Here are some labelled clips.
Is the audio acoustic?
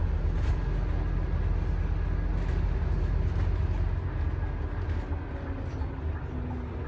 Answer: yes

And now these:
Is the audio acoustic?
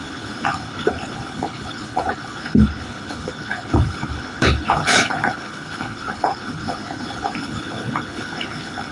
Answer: no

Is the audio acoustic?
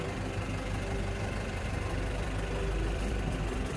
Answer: no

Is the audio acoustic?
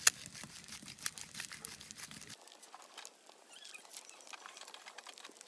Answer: yes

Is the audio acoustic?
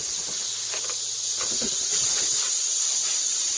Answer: yes